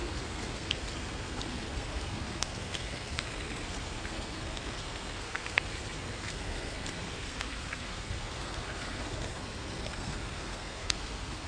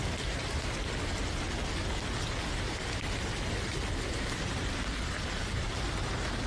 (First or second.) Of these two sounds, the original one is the second